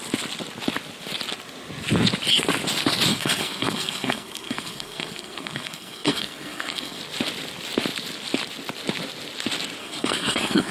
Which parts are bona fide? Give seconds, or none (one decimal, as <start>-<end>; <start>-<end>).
0.0-3.1; 7.0-9.8